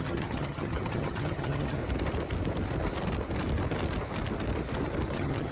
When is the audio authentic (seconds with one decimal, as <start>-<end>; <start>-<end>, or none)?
1.8-5.1